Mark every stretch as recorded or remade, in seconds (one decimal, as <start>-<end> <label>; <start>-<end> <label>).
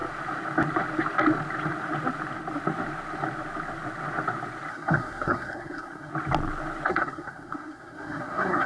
0.0-4.7 recorded; 4.7-6.1 remade; 6.1-6.9 recorded; 6.9-8.7 remade